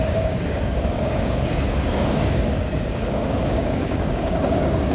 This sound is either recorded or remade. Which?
remade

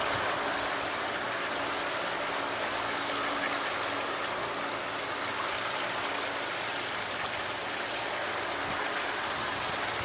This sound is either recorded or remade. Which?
recorded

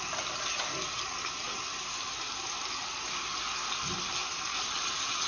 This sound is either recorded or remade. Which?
recorded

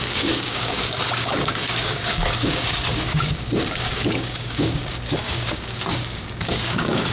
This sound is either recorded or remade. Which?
remade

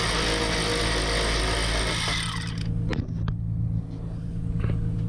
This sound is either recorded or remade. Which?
recorded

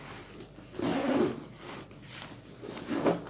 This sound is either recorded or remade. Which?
recorded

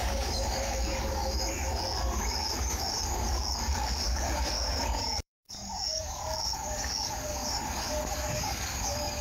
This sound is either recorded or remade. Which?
remade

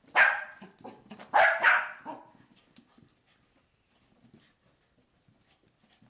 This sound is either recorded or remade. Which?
recorded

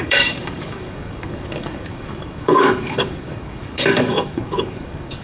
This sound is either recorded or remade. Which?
remade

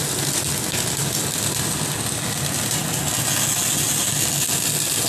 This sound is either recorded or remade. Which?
recorded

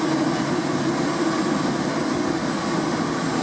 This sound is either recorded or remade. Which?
recorded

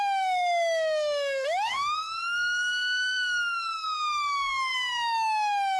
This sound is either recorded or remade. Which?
remade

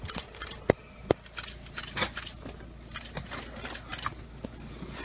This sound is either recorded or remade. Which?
recorded